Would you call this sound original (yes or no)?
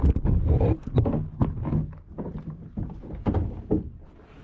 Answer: yes